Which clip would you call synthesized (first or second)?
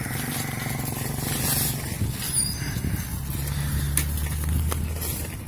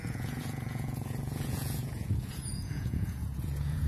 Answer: second